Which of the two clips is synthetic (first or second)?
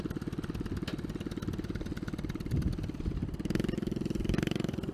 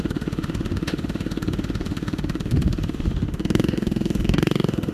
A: second